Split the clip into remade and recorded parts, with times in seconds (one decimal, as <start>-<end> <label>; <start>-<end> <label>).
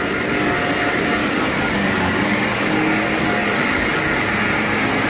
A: 0.0-1.2 recorded; 1.2-4.3 remade; 4.3-5.1 recorded